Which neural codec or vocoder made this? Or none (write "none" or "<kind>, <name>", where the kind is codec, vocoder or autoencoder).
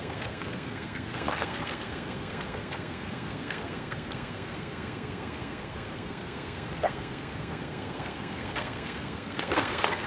codec, SNAC